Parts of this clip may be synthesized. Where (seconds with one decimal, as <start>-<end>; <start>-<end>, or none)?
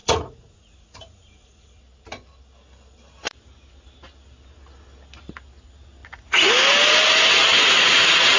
0.0-1.8; 6.0-6.5; 7.5-8.4